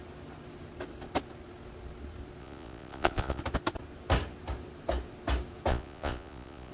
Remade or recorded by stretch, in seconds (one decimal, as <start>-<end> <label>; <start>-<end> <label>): 0.0-2.4 recorded; 2.4-3.4 remade; 3.4-5.7 recorded; 5.7-6.7 remade